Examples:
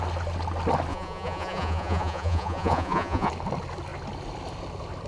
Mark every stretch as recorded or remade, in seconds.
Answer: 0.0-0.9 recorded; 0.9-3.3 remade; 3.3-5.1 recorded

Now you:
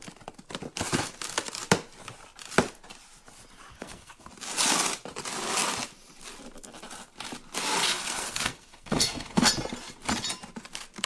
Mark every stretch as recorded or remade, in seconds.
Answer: 0.0-3.7 recorded; 3.7-4.3 remade; 4.3-7.9 recorded; 7.9-9.5 remade; 9.5-11.1 recorded

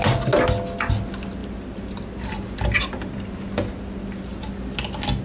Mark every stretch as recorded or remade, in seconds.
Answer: 0.0-5.2 recorded

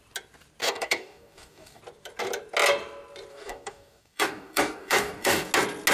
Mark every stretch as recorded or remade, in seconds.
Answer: 0.0-0.6 recorded; 0.6-1.8 remade; 1.8-3.3 recorded; 3.3-5.5 remade; 5.5-5.9 recorded

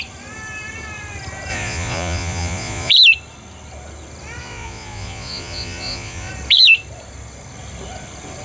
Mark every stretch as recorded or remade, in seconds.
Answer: 0.0-1.5 recorded; 1.5-2.9 remade; 2.9-4.4 recorded; 4.4-6.3 remade; 6.3-8.4 recorded

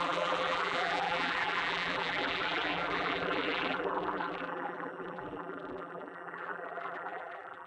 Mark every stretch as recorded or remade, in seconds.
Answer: 0.0-7.7 remade